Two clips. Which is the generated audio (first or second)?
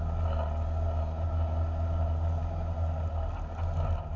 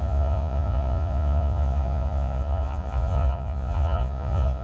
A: second